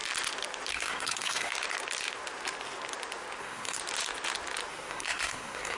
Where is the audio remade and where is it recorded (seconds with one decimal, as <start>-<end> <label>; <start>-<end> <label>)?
0.0-0.7 recorded; 0.7-1.5 remade; 1.5-3.4 recorded; 3.4-3.8 remade; 3.8-4.7 recorded; 4.7-5.8 remade